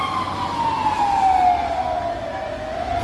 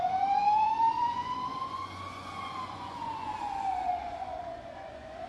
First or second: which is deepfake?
second